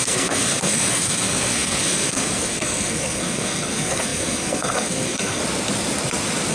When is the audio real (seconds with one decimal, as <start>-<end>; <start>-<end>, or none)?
5.4-6.5